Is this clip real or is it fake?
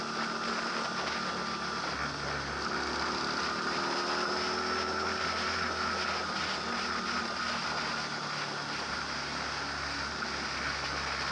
real